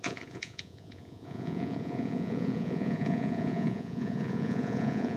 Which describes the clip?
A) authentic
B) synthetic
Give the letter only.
B